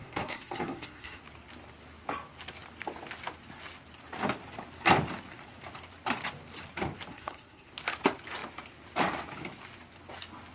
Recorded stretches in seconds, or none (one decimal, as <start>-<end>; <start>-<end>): 1.2-7.1; 7.7-10.5